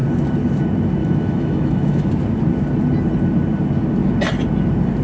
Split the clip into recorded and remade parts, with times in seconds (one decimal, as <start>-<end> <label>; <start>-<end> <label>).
0.0-1.0 recorded; 1.0-2.1 remade; 2.1-5.0 recorded